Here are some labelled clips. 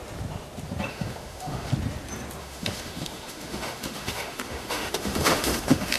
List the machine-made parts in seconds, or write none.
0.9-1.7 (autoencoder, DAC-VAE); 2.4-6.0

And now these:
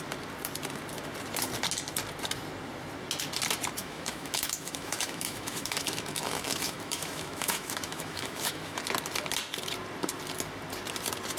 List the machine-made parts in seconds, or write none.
3.8-8.8 (autoencoder, DAC-VAE)

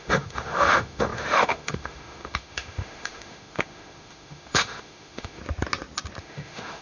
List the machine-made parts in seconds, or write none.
0.0-5.4 (autoencoder, DAC-VAE); 6.2-6.8

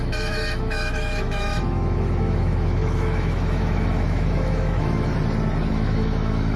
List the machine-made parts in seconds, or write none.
0.0-5.1 (autoencoder, DAC-VAE); 5.7-6.6

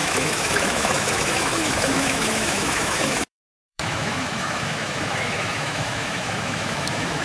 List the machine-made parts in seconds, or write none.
0.0-7.2 (autoencoder, DAC-VAE)

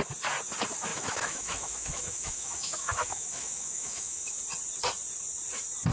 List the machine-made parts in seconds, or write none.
0.9-4.4 (autoencoder, DAC-VAE)

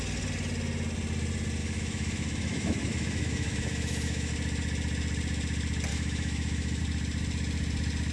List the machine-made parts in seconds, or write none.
1.6-4.3 (autoencoder, DAC-VAE); 5.9-6.8

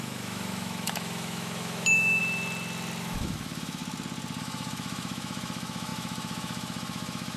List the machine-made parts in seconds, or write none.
0.0-2.2 (autoencoder, DAC-VAE); 3.0-3.8; 4.4-7.4